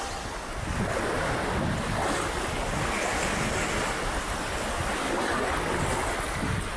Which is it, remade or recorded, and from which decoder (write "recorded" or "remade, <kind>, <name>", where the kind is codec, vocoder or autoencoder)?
recorded